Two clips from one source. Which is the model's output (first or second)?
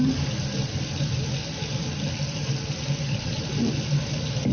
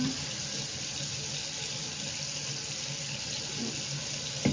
first